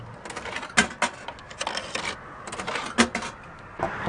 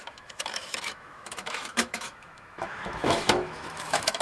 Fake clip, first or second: second